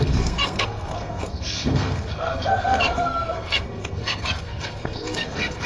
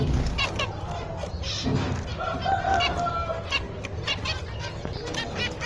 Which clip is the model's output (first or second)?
first